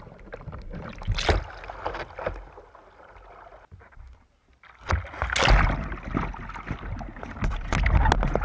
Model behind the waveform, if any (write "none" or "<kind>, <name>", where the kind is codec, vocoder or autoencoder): none